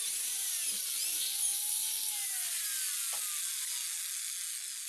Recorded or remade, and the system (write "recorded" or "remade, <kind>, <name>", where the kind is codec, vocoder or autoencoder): recorded